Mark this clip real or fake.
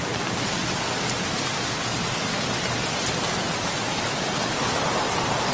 real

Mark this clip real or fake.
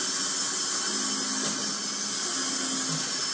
real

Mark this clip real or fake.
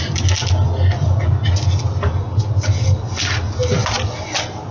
real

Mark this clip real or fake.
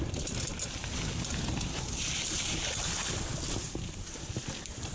real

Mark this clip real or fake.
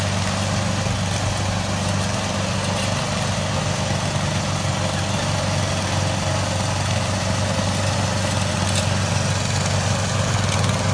real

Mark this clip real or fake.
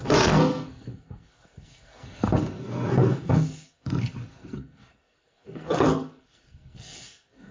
fake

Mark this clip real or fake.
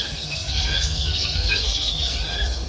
fake